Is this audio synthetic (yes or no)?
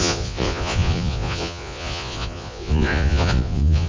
yes